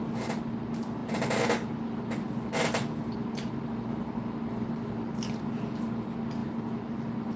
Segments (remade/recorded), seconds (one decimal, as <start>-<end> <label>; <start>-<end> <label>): 0.0-7.4 recorded